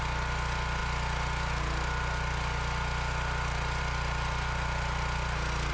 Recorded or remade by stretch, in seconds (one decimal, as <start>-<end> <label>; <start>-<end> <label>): 0.0-5.7 recorded